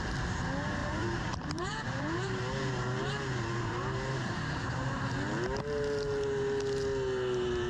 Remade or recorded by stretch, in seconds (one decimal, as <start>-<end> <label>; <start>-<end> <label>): 0.0-0.8 recorded; 0.8-5.0 remade; 5.0-7.7 recorded